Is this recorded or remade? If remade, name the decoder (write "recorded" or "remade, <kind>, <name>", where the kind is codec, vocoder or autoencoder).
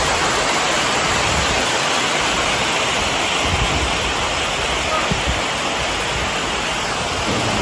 recorded